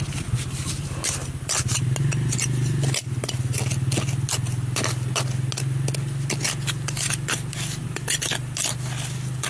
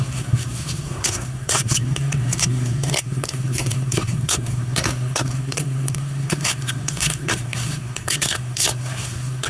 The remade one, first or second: second